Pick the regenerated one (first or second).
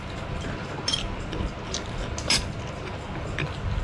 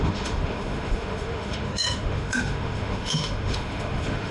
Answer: second